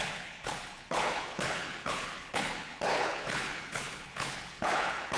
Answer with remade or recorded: remade